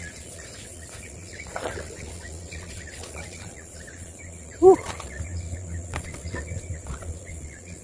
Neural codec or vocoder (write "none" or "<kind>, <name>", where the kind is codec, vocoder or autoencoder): vocoder, Vocos